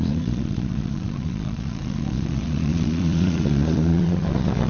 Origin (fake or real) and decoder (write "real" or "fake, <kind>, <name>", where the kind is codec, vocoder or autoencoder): fake, vocoder, Vocos